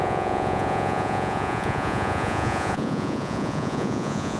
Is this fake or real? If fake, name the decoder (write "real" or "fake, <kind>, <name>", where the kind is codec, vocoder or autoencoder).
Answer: fake, vocoder, Vocos